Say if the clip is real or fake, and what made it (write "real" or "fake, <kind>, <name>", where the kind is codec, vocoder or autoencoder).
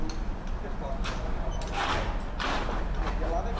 real